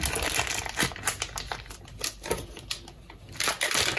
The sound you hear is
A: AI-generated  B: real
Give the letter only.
B